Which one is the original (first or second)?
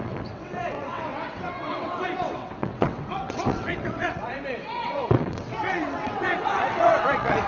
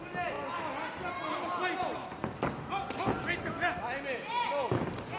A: second